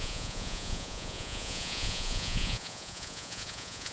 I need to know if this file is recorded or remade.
remade